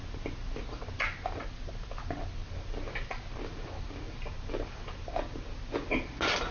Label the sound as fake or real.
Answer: real